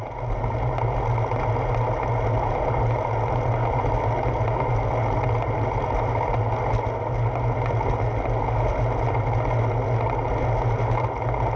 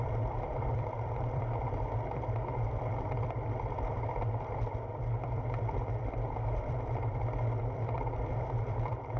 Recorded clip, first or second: first